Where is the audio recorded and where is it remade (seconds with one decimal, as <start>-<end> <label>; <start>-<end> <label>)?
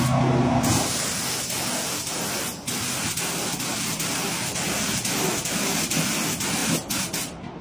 0.0-7.6 recorded